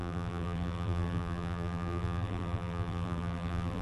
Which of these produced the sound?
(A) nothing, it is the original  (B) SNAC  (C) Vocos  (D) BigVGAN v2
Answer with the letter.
D